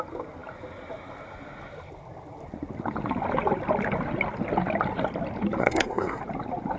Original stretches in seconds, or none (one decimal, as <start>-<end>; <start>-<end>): 0.0-5.6; 6.2-6.8